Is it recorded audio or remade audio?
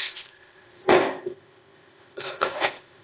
remade